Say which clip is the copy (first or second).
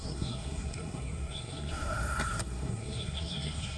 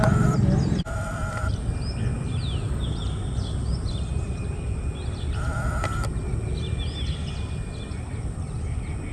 first